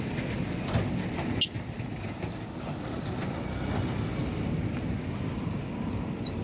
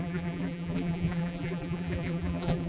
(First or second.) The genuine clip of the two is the first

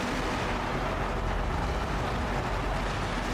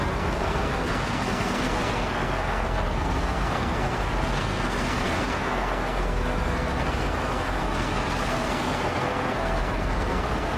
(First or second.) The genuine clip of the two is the first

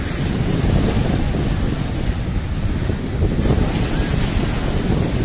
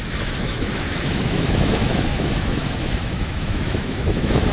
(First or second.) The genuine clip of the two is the first